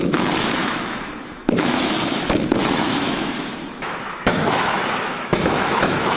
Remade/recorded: remade